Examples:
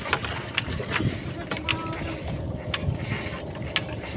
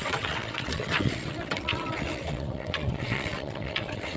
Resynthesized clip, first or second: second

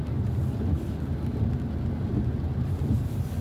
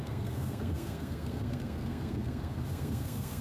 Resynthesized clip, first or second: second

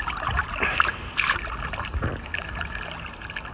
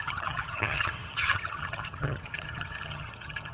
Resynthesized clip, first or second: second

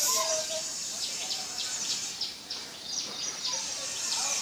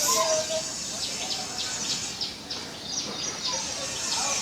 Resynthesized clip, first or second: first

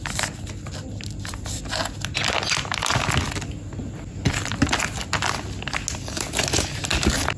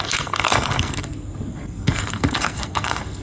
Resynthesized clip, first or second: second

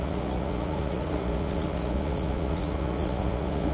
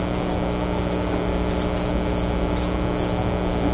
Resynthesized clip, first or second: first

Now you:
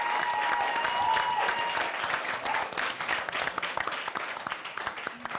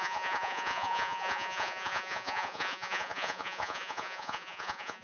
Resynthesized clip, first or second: second